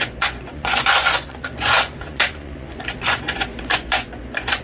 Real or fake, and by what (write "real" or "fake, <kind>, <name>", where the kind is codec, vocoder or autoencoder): fake, vocoder, Vocos